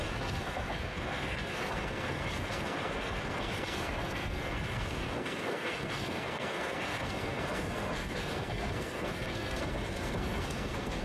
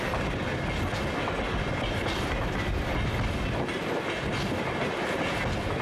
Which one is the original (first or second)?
second